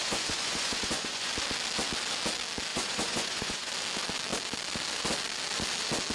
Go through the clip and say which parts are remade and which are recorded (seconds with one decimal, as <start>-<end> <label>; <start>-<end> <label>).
0.0-1.3 remade; 1.3-2.7 recorded; 2.7-3.7 remade; 3.7-6.1 recorded